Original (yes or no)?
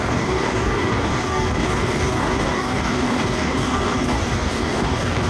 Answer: no